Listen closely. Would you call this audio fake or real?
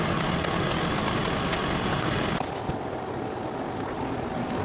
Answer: real